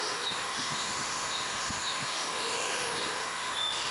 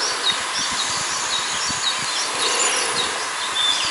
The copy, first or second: first